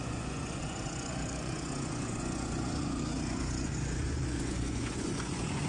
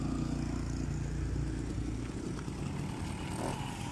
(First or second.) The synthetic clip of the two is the first